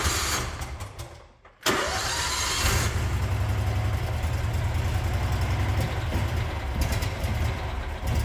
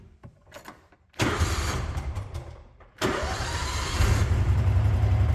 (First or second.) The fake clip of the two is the second